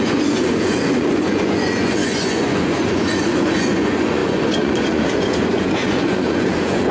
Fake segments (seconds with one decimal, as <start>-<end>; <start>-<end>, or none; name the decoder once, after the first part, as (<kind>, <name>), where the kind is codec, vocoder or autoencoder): 0.0-6.9 (vocoder, Vocos)